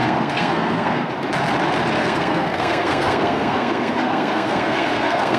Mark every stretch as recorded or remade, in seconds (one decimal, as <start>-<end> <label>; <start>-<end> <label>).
0.0-1.1 remade; 1.1-2.0 recorded; 2.0-5.4 remade